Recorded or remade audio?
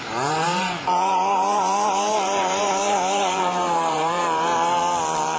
remade